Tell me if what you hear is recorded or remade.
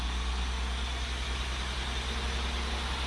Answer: recorded